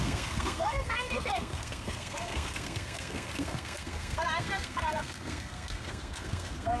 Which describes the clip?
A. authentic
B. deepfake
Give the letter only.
B